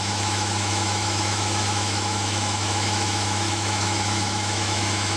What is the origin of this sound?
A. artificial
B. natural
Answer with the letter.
A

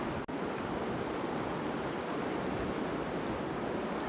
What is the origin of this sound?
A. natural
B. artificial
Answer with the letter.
A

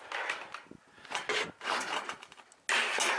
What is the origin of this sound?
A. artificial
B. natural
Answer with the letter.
B